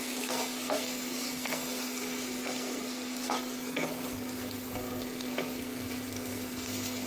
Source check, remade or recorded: remade